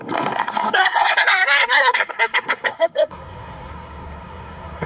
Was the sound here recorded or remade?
remade